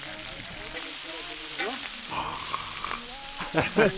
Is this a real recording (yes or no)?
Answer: yes